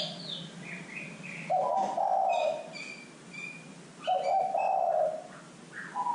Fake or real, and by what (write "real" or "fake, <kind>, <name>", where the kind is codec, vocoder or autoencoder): real